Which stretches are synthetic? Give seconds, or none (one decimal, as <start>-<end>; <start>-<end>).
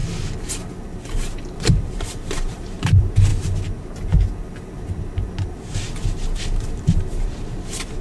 1.6-3.3; 5.5-8.0